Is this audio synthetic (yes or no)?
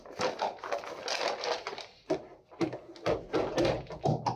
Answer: no